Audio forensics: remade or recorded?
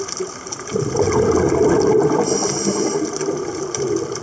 recorded